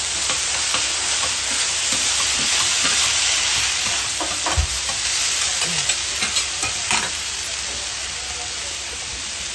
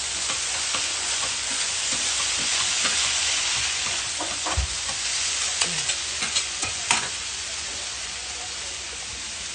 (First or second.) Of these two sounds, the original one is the first